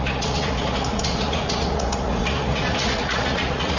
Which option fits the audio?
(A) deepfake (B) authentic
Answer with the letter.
A